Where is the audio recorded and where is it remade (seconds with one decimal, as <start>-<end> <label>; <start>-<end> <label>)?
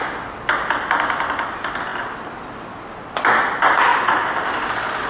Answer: 0.0-3.9 remade; 3.9-5.1 recorded